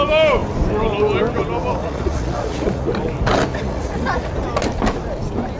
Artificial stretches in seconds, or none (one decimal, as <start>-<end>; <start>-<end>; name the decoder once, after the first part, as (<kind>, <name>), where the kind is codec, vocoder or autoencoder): 1.8-2.9 (vocoder, Vocos); 3.5-4.3